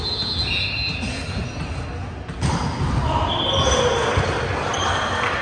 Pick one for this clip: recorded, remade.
recorded